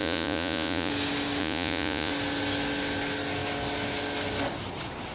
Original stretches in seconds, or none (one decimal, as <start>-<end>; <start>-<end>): 0.9-1.4; 2.1-5.1